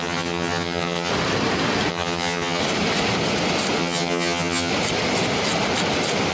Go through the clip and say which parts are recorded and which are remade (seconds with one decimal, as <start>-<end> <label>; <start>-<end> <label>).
0.0-1.1 remade; 1.1-1.9 recorded; 1.9-2.6 remade; 2.6-3.8 recorded; 3.8-4.7 remade; 4.7-6.3 recorded